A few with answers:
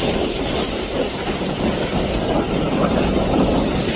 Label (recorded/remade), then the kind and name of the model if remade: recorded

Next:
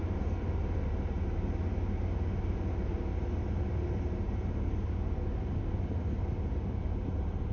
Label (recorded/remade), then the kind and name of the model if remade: recorded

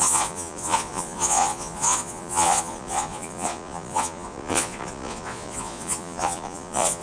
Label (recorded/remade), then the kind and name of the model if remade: remade, vocoder, Vocos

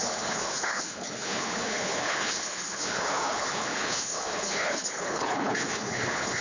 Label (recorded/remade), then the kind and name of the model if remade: remade, codec, HILCodec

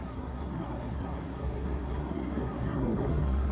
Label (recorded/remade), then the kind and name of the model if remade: remade, codec, SNAC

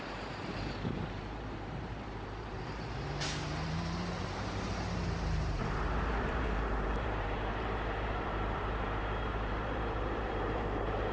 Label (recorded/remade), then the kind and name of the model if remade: remade, vocoder, BigVGAN v2